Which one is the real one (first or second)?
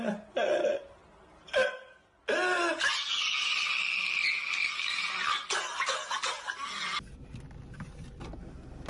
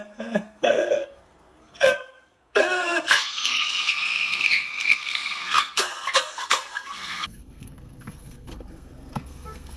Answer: first